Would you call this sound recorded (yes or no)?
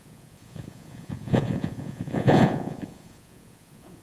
no